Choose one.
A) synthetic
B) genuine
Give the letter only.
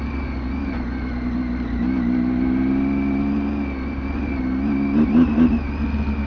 B